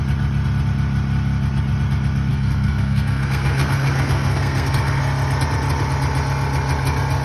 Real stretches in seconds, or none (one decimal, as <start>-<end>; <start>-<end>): 0.0-2.3; 5.0-7.2